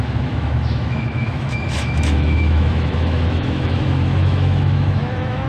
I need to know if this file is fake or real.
fake